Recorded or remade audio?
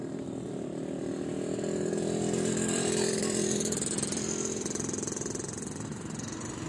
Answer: remade